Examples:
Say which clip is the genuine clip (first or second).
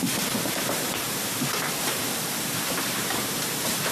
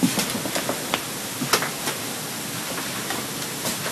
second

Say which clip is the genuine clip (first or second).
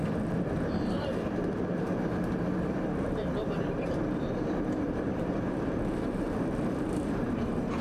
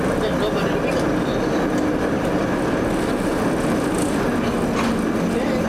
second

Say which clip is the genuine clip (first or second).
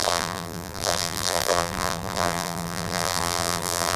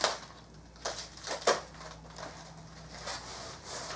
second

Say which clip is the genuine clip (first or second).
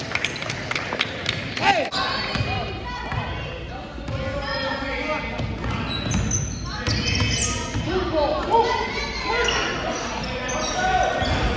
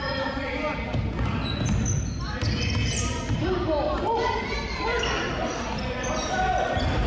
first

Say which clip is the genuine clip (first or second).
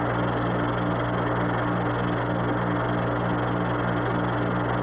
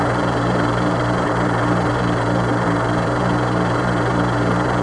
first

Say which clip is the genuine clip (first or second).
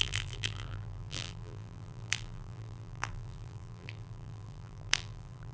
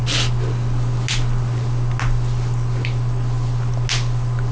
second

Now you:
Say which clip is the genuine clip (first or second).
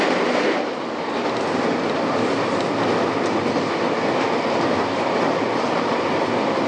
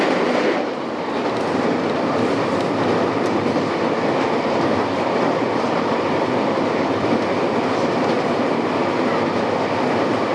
first